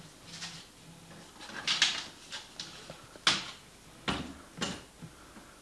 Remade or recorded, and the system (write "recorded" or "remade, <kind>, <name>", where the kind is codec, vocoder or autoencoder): recorded